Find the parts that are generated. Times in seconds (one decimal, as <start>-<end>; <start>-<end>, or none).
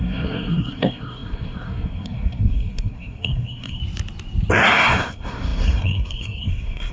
0.0-3.8; 4.5-6.9